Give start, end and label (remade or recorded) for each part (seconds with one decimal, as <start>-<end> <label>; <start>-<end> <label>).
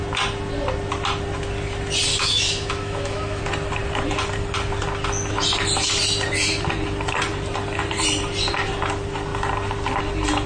0.0-2.1 recorded; 2.1-3.4 remade; 3.4-10.5 recorded